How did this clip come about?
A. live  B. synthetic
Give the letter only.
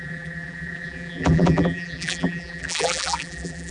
B